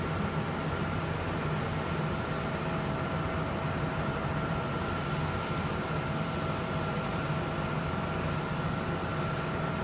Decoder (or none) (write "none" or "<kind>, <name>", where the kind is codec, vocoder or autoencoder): none